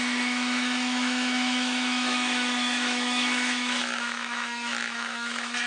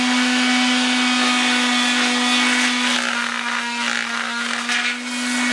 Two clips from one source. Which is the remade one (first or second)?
first